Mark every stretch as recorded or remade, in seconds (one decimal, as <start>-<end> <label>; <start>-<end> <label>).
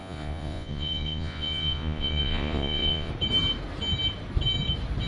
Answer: 0.0-3.1 remade; 3.1-5.1 recorded